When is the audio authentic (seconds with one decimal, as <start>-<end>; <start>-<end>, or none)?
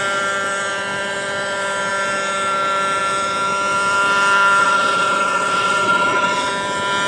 0.0-4.6; 6.5-7.1